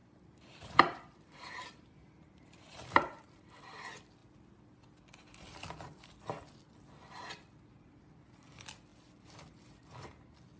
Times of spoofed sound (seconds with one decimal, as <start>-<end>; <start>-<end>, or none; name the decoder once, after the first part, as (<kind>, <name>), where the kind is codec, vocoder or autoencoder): 0.0-3.6 (vocoder, BigVGAN v2)